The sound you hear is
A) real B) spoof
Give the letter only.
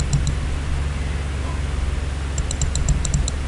A